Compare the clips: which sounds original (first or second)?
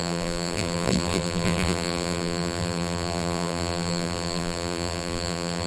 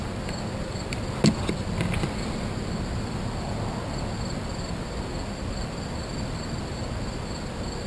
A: second